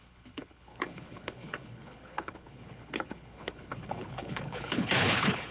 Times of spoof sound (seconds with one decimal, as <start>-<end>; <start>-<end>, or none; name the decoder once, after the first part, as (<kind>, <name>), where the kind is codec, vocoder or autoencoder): 0.0-5.5 (codec, HILCodec)